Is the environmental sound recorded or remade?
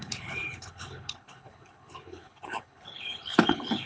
remade